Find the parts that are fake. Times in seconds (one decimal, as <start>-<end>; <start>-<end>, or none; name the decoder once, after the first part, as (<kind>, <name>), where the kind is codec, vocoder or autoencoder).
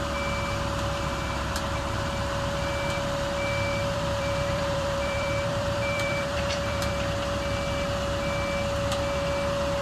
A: 3.7-6.9 (vocoder, BigVGAN v2)